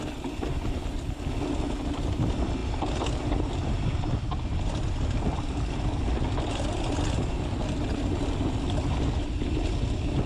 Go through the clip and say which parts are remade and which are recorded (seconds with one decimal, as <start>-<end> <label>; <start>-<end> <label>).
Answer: 0.0-10.3 recorded